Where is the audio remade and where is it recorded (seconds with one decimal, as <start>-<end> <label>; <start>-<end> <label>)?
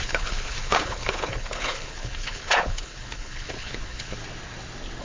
0.0-4.2 remade; 4.2-5.0 recorded